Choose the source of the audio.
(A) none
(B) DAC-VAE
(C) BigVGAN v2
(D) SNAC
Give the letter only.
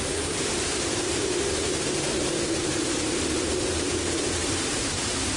C